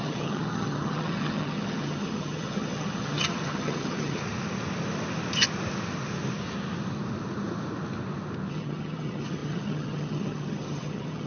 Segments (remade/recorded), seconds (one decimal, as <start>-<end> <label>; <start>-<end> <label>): 0.0-4.2 remade; 4.2-8.5 recorded; 8.5-11.3 remade